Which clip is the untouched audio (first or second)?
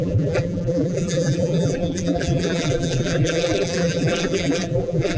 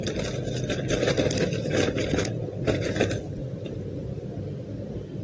second